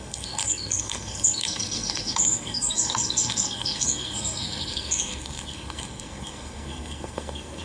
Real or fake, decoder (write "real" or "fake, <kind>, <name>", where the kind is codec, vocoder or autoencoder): fake, codec, SNAC